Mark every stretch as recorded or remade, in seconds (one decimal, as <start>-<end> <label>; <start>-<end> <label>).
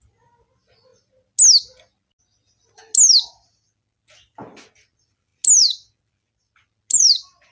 0.0-7.5 recorded